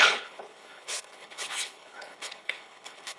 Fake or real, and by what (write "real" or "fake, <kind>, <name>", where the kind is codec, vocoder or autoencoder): fake, codec, HILCodec